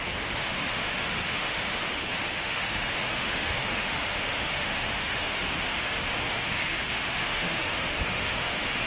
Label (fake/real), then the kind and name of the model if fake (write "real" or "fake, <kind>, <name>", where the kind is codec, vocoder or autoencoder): fake, autoencoder, DAC-VAE